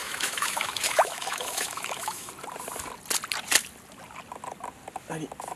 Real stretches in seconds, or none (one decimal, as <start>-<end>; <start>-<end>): 2.3-5.6